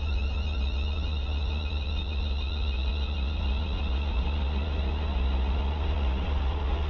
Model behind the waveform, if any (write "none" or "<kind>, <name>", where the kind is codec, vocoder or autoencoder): vocoder, Vocos